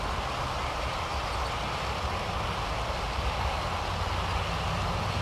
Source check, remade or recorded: recorded